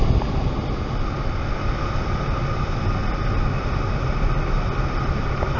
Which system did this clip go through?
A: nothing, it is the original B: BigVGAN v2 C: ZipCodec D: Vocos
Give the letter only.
A